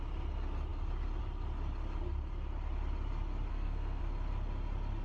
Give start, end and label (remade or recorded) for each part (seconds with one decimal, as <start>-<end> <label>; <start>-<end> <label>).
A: 0.0-3.5 recorded; 3.5-4.0 remade; 4.0-5.0 recorded